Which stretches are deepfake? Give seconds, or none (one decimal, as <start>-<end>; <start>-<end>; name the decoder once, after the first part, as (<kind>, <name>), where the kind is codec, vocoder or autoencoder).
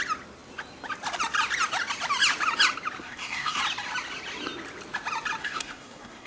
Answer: 3.0-3.6 (codec, SNAC); 5.4-6.3